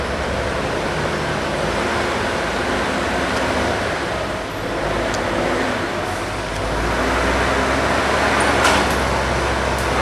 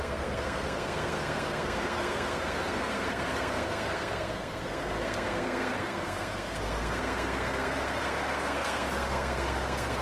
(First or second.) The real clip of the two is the first